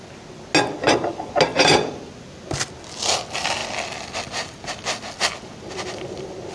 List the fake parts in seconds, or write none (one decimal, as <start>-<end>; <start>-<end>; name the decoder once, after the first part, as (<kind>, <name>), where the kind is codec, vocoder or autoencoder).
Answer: 1.5-2.1 (vocoder, BigVGAN v2); 3.6-6.5